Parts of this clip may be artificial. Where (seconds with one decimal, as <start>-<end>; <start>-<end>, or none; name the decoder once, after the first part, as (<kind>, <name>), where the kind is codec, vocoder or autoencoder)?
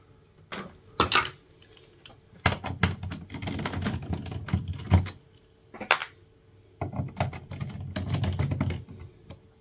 none